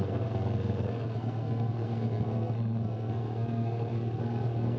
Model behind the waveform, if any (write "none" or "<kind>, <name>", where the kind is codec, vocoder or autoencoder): codec, SNAC